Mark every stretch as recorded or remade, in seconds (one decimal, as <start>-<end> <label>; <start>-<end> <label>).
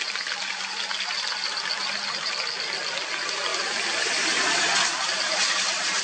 0.0-3.5 recorded; 3.5-4.6 remade; 4.6-6.0 recorded